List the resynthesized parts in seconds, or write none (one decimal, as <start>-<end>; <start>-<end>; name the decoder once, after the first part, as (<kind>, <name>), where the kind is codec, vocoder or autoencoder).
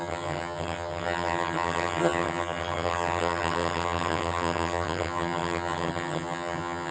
0.0-6.9 (vocoder, HiFi-GAN)